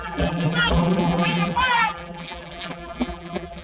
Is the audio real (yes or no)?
no